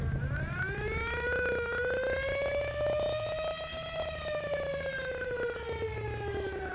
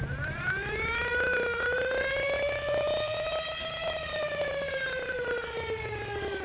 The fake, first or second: second